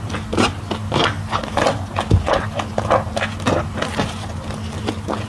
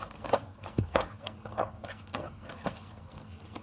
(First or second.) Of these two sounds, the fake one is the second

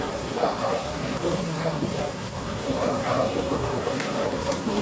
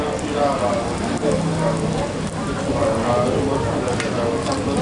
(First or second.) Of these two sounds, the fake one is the first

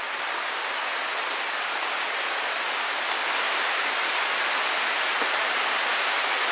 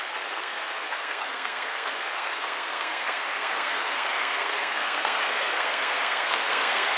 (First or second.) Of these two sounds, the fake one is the second